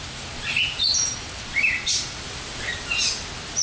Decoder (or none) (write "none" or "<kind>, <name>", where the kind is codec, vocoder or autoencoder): none